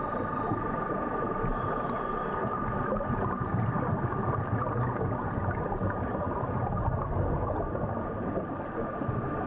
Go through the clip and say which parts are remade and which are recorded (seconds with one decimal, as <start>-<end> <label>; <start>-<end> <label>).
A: 0.0-9.5 recorded